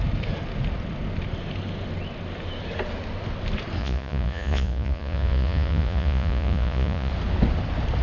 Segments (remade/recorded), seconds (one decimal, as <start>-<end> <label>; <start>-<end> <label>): 0.0-3.8 recorded; 3.8-7.1 remade; 7.1-8.0 recorded